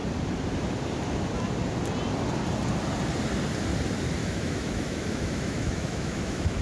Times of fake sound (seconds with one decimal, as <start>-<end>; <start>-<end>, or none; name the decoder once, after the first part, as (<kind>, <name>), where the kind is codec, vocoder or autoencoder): 4.2-6.6 (autoencoder, DAC-VAE)